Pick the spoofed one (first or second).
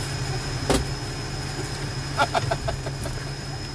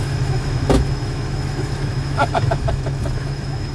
second